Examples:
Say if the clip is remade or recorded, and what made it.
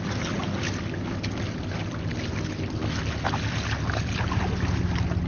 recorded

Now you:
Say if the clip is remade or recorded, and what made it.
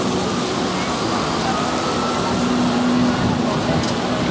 recorded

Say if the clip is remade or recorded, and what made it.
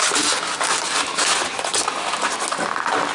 recorded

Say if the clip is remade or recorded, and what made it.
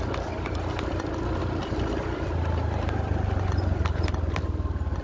recorded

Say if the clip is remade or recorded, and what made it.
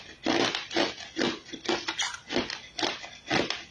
recorded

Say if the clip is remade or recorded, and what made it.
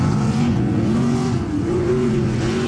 remade, vocoder, Vocos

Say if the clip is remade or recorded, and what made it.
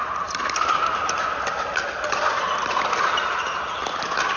recorded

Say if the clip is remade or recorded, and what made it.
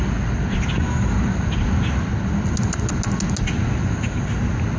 recorded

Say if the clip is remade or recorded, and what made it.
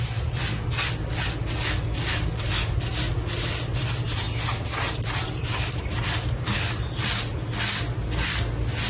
recorded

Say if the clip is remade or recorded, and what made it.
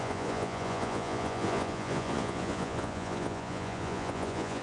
remade, vocoder, Vocos